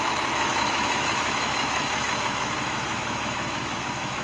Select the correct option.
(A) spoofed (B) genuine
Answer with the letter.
A